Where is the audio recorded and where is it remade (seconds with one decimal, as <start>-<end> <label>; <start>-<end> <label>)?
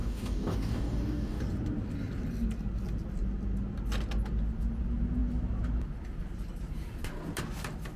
0.0-1.4 remade; 1.4-8.0 recorded